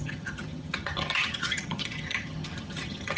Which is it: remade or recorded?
remade